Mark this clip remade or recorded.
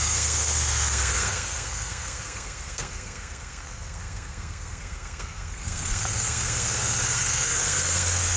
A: remade